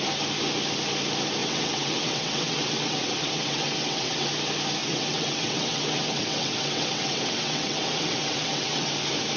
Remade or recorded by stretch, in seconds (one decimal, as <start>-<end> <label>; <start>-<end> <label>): 0.0-1.4 recorded; 1.4-4.3 remade; 4.3-4.8 recorded; 4.8-8.9 remade; 8.9-9.4 recorded